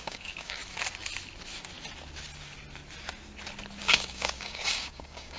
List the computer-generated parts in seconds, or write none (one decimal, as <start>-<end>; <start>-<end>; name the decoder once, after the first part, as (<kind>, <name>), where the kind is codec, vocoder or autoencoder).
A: 0.0-0.6 (codec, DAC); 3.8-5.4